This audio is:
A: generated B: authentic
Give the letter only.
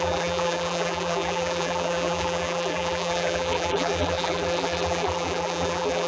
A